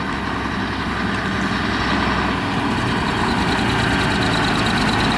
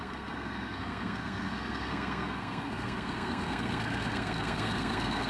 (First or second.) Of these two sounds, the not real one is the second